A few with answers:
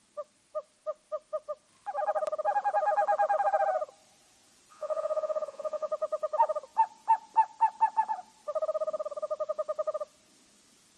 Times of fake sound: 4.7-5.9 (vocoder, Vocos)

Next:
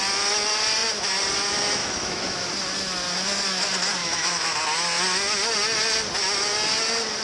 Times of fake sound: 1.8-2.5 (autoencoder, DAC-VAE); 4.0-4.6

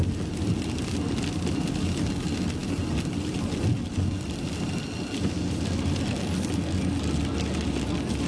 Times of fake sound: none

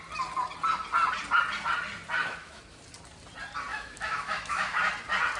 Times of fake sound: 2.2-2.8 (autoencoder, DAC-VAE); 3.7-4.8

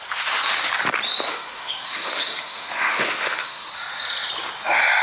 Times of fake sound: 1.3-3.7 (autoencoder, DAC-VAE)

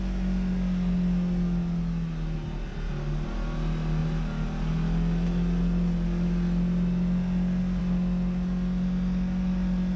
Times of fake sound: none